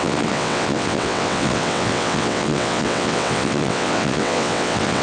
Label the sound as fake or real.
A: fake